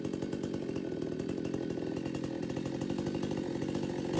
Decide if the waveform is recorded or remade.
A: recorded